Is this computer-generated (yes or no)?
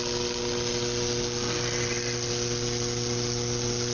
no